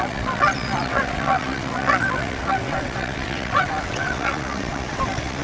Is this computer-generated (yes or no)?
yes